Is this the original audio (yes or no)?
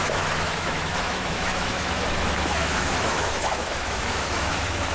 no